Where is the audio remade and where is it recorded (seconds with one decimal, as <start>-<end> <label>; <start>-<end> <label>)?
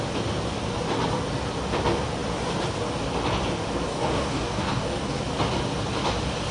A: 0.0-3.9 recorded; 3.9-5.2 remade; 5.2-6.5 recorded